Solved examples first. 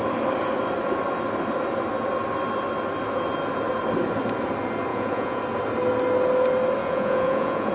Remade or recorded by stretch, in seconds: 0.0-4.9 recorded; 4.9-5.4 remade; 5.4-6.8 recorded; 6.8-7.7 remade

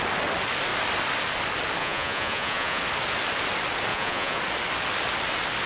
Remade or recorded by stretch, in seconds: 0.0-1.8 recorded; 1.8-2.8 remade; 2.8-3.9 recorded; 3.9-4.4 remade; 4.4-5.7 recorded